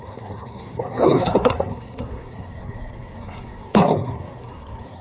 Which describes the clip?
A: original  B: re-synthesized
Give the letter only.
B